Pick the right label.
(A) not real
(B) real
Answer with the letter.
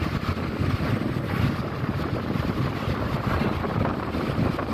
B